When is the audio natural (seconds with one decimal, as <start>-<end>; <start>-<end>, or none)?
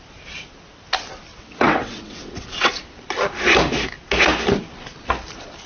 0.0-1.3; 2.7-5.7